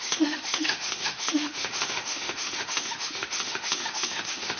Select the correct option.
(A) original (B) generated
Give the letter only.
B